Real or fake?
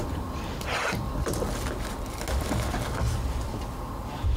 real